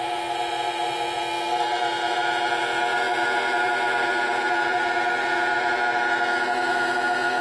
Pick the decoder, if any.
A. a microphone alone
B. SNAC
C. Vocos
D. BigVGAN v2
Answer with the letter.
C